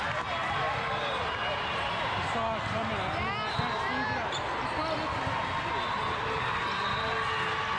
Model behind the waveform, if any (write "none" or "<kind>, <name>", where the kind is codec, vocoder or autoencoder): none